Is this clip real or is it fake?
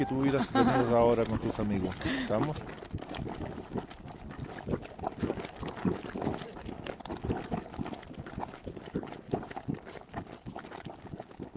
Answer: real